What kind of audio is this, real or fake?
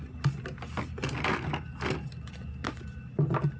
real